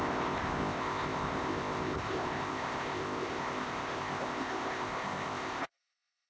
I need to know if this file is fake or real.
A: fake